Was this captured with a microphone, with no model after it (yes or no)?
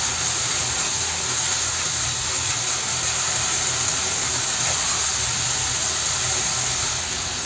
yes